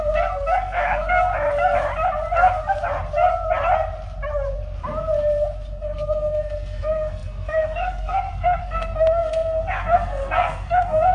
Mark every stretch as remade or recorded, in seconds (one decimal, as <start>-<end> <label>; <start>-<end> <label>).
0.0-1.3 remade; 1.3-5.7 recorded; 5.7-11.1 remade